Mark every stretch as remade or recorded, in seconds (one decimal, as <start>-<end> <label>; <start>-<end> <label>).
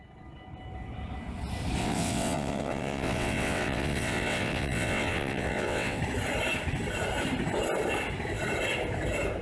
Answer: 0.0-1.8 recorded; 1.8-6.0 remade; 6.0-9.4 recorded